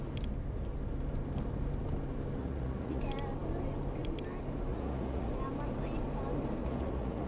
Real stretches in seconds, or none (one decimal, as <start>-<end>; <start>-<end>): 0.0-2.4; 3.0-4.7; 5.3-6.6